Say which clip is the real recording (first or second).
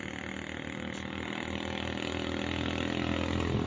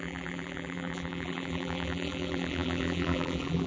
first